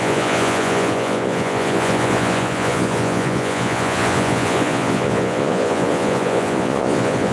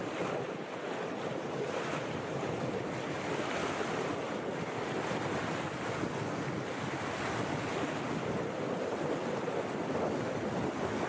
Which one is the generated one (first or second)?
first